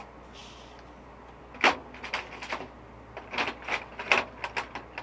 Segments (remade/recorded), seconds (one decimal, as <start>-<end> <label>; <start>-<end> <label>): 0.0-5.0 recorded